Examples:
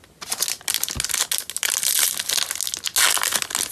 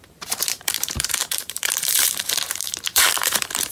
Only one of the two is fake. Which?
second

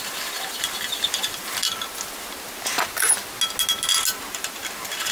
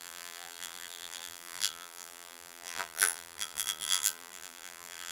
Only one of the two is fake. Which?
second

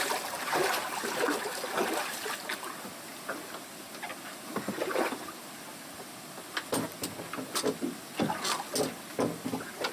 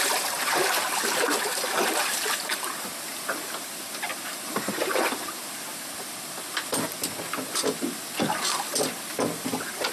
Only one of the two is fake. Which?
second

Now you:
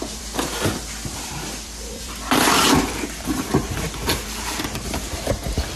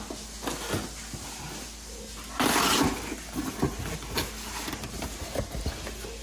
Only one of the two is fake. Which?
first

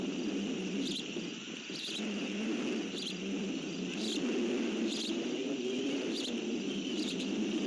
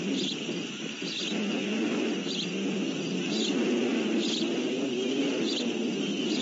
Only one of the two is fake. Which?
first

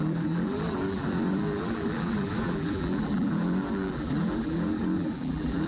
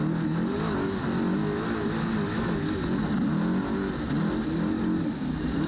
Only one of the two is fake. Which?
first